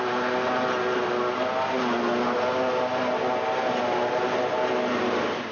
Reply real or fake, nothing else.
real